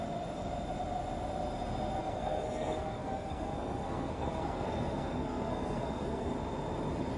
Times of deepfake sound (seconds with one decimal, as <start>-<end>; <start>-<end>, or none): 2.0-6.3